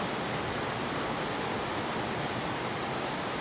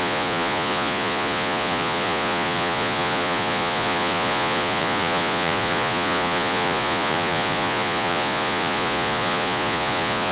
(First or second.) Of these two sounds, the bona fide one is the first